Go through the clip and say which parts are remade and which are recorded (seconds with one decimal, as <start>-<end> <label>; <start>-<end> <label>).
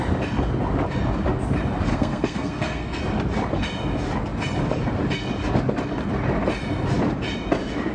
0.0-1.9 recorded; 1.9-3.0 remade; 3.0-7.9 recorded